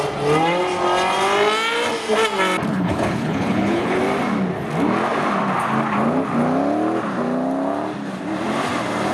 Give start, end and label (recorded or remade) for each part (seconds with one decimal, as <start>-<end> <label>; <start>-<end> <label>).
0.0-2.7 recorded; 2.7-4.0 remade; 4.0-9.1 recorded